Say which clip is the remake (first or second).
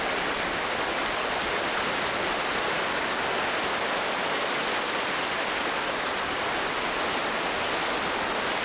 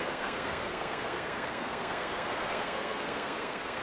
second